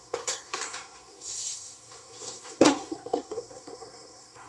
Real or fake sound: fake